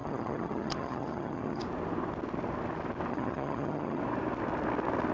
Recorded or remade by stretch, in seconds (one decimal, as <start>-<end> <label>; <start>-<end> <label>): 0.0-1.6 remade; 1.6-3.1 recorded; 3.1-4.0 remade; 4.0-5.1 recorded